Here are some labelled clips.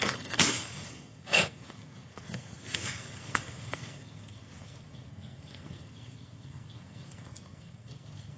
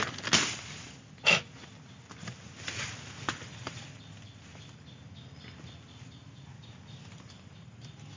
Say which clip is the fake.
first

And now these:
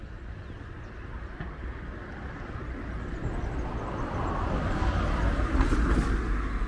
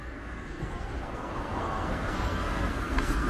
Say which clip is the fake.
second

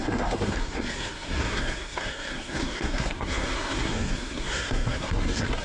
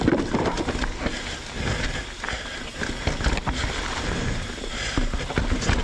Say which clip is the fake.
first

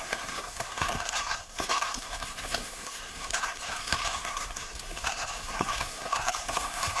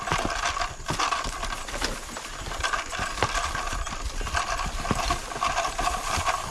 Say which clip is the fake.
first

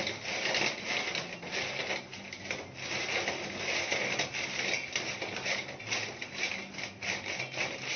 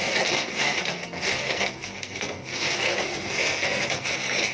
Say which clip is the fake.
second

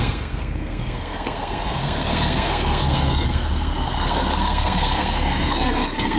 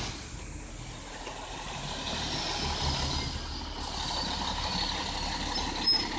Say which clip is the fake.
first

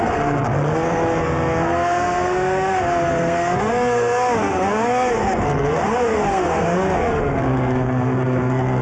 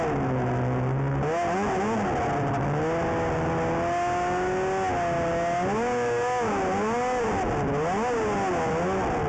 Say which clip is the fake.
first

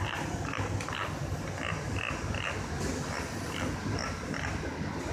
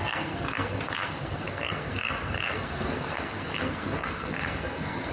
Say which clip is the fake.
second